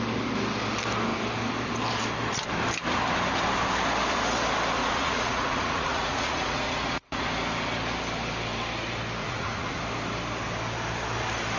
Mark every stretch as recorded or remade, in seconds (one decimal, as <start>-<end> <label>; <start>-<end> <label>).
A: 0.0-4.8 recorded; 4.8-7.3 remade; 7.3-9.2 recorded; 9.2-9.8 remade; 9.8-11.6 recorded